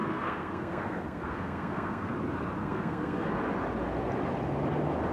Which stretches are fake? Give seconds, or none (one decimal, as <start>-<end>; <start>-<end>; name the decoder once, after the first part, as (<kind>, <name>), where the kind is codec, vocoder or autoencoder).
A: 0.0-2.1 (codec, SNAC); 2.6-3.3